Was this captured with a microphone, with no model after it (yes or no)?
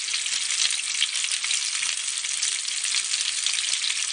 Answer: yes